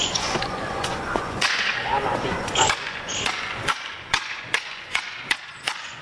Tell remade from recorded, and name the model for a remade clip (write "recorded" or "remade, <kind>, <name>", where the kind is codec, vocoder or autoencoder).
remade, vocoder, Vocos